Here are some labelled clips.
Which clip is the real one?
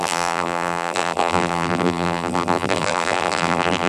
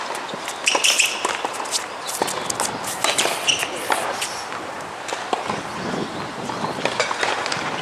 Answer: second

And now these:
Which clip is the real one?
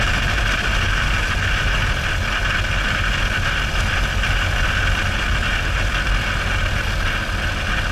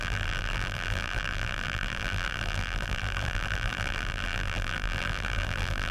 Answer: first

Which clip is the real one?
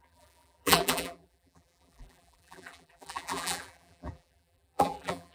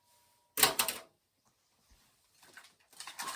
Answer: second